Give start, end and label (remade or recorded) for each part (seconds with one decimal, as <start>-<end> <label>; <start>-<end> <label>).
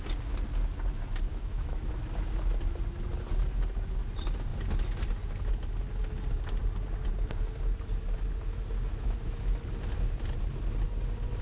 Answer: 0.0-1.3 recorded; 1.3-1.9 remade; 1.9-8.9 recorded; 8.9-9.6 remade; 9.6-11.4 recorded